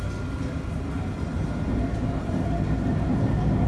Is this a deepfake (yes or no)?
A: no